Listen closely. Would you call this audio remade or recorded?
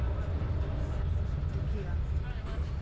recorded